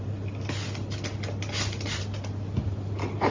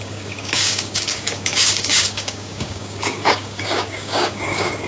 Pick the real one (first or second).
first